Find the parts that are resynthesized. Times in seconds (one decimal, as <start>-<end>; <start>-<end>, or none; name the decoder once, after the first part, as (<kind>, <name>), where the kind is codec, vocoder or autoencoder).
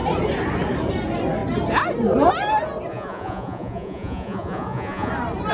2.9-5.1 (vocoder, Vocos)